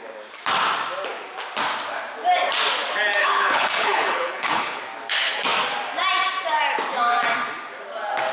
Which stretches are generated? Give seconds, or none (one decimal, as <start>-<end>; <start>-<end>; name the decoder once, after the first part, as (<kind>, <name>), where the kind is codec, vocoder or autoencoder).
3.2-4.8 (codec, HILCodec)